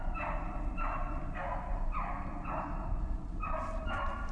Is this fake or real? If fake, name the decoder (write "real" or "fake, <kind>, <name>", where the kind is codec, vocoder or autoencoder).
real